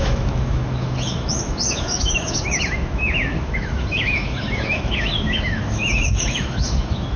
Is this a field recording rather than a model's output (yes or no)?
no